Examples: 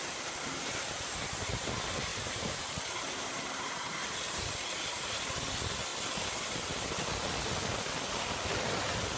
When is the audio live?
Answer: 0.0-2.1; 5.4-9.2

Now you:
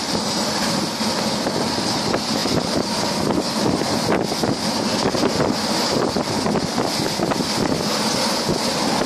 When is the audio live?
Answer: 0.0-9.1

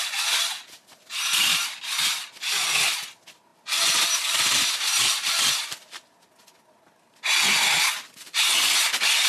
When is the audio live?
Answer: 0.0-9.3

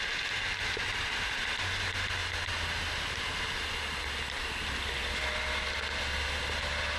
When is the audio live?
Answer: 0.0-7.0